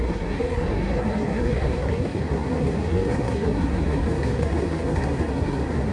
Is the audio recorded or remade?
remade